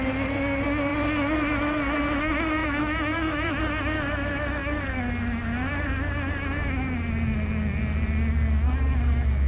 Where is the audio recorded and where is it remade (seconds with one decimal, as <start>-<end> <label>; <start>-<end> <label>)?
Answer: 0.0-2.6 recorded; 2.6-3.6 remade; 3.6-9.5 recorded